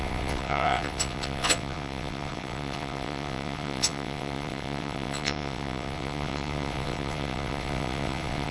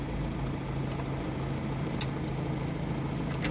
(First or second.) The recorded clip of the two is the second